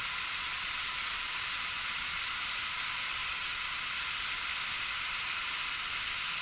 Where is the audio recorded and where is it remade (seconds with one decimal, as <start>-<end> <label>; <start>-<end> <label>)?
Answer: 0.0-0.4 recorded; 0.4-2.3 remade; 2.3-3.2 recorded; 3.2-4.0 remade; 4.0-6.4 recorded

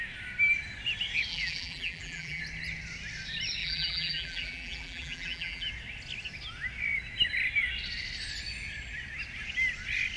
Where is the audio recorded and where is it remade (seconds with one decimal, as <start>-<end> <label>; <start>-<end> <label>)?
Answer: 0.0-1.3 recorded; 1.3-2.4 remade; 2.4-3.6 recorded; 3.6-5.7 remade; 5.7-10.2 recorded

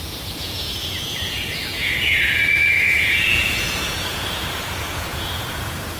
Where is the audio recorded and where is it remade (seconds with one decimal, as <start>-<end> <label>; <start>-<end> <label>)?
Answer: 0.0-6.0 remade

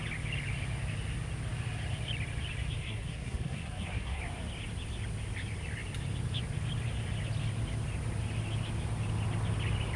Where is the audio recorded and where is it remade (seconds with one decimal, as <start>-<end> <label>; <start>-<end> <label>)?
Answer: 0.0-2.8 recorded; 2.8-4.2 remade; 4.2-10.0 recorded

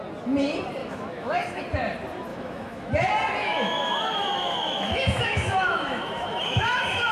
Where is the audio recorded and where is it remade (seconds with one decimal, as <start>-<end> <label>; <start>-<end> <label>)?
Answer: 0.0-0.8 recorded; 0.8-1.6 remade; 1.6-2.3 recorded; 2.3-2.9 remade; 2.9-3.4 recorded; 3.4-7.1 remade

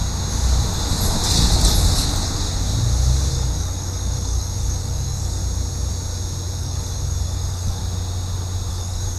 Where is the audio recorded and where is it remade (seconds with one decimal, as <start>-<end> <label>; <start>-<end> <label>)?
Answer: 0.0-3.3 recorded; 3.3-5.4 remade; 5.4-6.6 recorded; 6.6-7.8 remade; 7.8-8.7 recorded; 8.7-9.2 remade